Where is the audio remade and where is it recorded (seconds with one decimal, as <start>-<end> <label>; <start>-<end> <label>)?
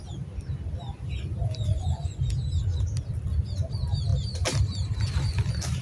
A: 0.0-1.6 recorded; 1.6-2.2 remade; 2.2-5.8 recorded